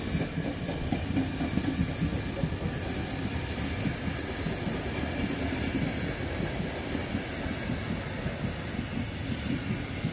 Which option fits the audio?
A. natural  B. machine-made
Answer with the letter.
A